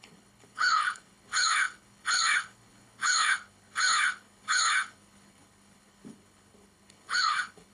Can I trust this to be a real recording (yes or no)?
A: no